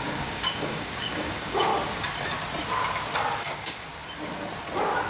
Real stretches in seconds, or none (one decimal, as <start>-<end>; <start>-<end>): 1.7-3.3; 3.9-5.1